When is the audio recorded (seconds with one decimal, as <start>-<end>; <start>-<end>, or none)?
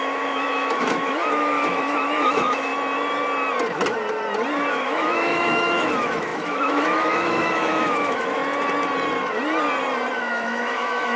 2.7-4.7; 8.4-10.2